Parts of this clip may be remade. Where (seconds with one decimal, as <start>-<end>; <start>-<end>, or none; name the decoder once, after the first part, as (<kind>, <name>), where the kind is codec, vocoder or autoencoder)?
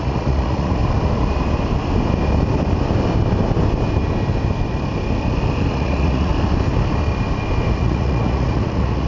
0.0-0.8 (vocoder, Vocos); 5.7-6.3; 7.7-9.1